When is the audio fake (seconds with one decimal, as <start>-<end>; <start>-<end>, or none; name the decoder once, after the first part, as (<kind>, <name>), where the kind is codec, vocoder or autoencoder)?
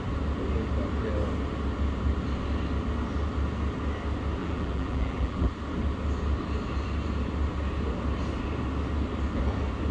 4.4-5.5 (vocoder, BigVGAN v2)